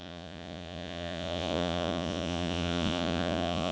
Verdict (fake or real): fake